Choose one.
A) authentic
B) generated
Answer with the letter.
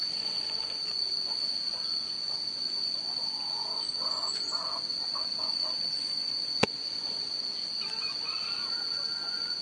B